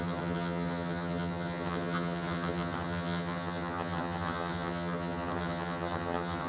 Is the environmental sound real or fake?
fake